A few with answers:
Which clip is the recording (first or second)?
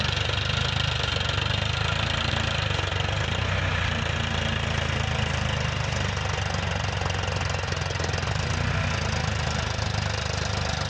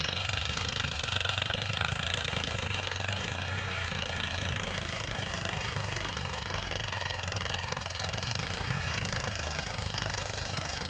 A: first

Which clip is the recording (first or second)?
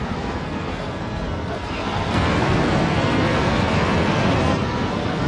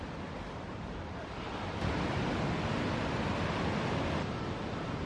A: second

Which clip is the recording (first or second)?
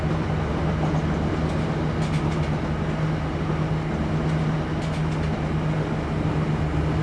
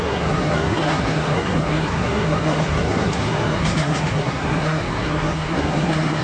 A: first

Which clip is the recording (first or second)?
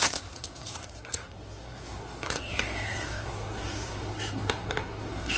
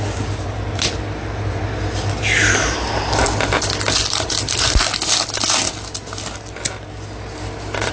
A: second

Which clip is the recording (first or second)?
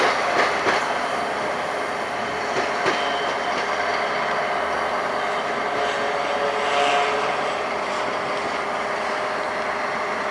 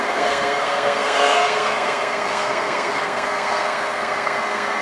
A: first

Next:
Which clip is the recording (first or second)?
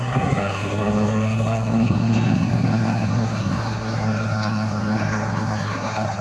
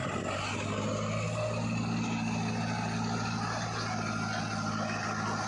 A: second